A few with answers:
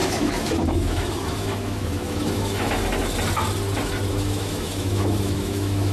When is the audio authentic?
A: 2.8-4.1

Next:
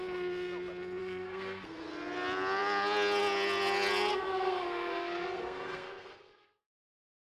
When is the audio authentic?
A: 0.0-1.0; 1.8-4.1; 6.6-7.3